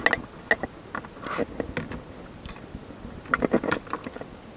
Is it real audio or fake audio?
real